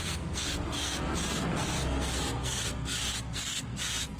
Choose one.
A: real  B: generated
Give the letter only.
B